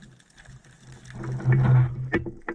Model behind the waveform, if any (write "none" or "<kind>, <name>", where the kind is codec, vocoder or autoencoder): none